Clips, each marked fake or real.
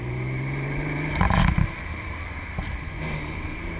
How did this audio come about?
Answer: fake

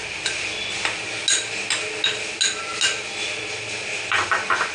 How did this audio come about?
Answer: real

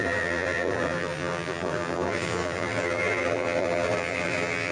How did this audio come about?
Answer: fake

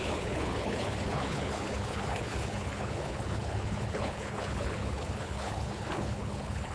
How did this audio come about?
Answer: fake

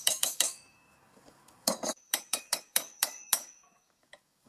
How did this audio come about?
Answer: fake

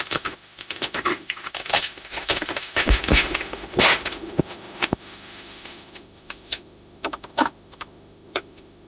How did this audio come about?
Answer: fake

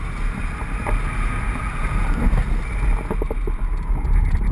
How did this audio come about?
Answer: real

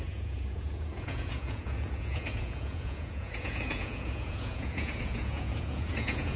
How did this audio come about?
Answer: fake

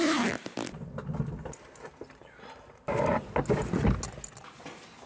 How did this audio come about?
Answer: real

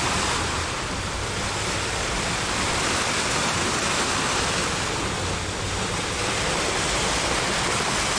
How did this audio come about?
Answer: real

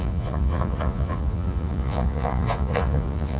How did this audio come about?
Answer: fake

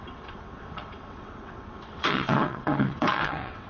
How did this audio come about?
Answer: fake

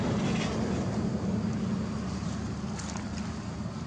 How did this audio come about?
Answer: real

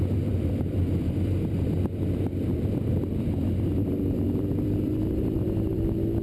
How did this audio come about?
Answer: fake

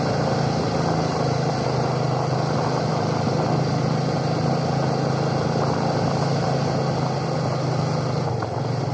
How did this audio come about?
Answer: real